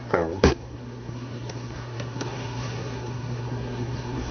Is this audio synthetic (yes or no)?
yes